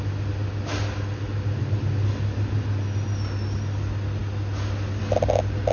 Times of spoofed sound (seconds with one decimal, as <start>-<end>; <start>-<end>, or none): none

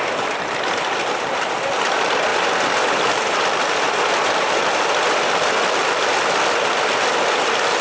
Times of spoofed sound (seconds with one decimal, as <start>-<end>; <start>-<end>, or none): none

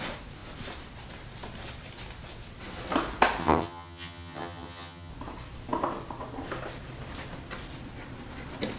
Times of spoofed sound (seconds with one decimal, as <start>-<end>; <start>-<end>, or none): 3.4-5.1

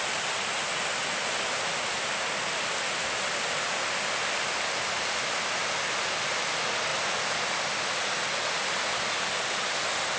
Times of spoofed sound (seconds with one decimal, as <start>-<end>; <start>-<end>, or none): none